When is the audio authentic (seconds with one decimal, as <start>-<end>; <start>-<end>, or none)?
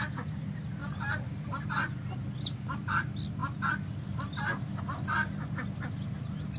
0.0-0.8; 1.6-6.6